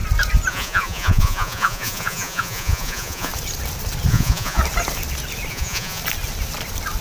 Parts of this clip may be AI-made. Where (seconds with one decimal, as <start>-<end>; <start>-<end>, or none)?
0.5-3.3; 4.1-4.6; 5.5-6.0